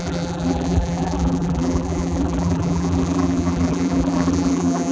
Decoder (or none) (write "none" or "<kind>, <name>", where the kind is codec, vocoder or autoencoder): vocoder, BigVGAN v2